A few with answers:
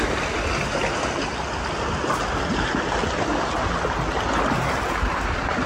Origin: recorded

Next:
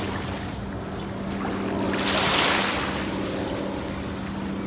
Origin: recorded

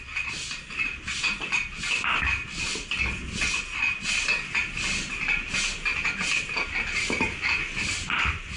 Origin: recorded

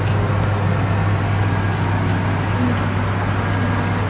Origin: recorded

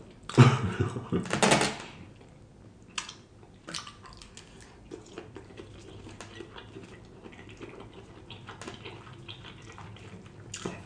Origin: recorded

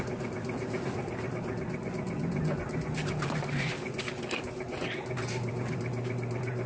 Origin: recorded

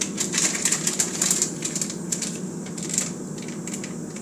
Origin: remade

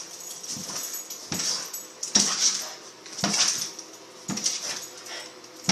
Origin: recorded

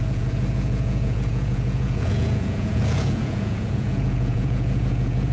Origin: remade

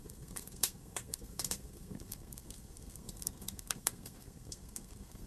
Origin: remade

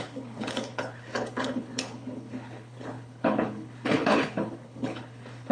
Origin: remade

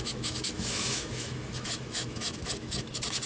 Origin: remade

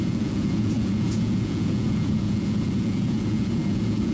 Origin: remade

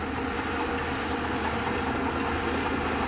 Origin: recorded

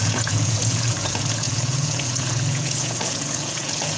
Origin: remade